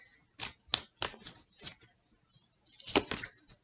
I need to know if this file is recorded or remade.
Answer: recorded